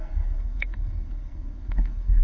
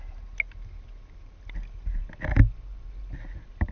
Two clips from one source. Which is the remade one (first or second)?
first